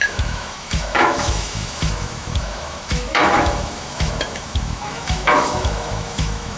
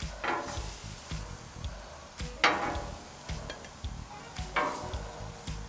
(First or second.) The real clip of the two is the second